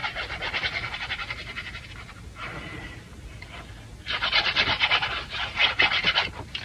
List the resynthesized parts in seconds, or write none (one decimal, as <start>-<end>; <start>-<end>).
none